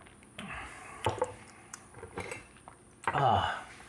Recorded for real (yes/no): no